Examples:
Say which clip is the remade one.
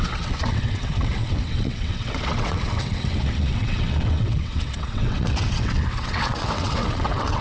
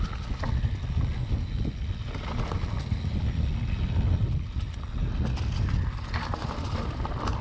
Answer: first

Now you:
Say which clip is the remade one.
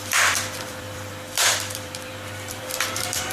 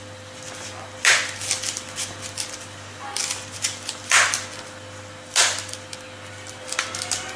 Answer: first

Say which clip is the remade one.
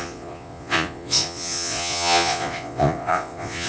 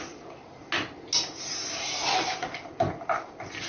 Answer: first